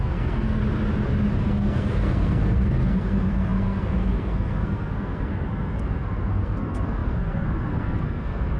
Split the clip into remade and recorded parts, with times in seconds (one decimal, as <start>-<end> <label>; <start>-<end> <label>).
0.0-0.6 remade; 0.6-1.4 recorded; 1.4-8.6 remade